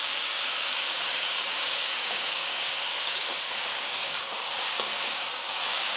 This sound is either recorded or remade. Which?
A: remade